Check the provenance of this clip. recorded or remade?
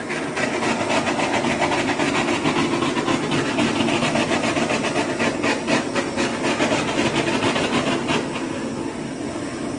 recorded